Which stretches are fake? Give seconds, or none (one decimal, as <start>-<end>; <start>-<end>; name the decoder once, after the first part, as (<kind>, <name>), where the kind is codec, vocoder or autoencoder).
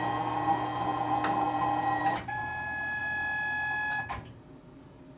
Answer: none